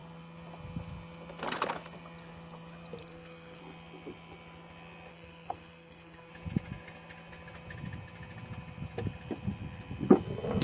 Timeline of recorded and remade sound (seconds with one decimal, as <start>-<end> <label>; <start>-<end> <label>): 0.0-3.0 recorded; 3.0-3.6 remade; 3.6-5.1 recorded; 5.1-6.3 remade; 6.3-10.6 recorded